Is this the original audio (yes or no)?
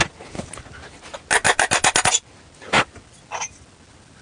yes